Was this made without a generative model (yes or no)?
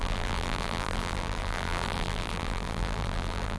no